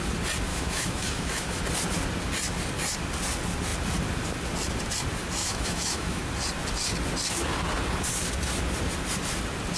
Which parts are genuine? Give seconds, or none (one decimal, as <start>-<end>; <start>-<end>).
0.0-0.5; 1.6-5.4; 6.2-9.8